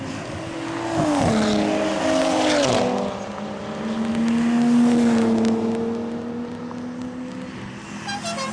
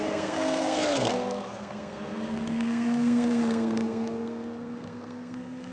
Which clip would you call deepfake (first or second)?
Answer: second